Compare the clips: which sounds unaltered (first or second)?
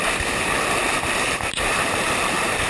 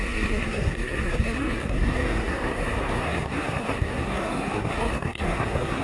first